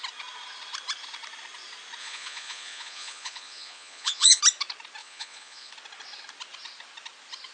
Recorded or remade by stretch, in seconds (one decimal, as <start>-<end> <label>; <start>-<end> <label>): 0.0-2.0 recorded; 2.0-4.4 remade; 4.4-5.0 recorded; 5.0-5.7 remade; 5.7-7.5 recorded